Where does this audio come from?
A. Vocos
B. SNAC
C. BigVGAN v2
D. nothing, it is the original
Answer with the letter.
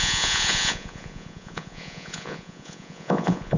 A